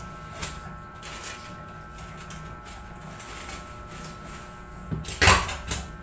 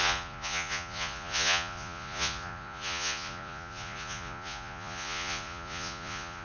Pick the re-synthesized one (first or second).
second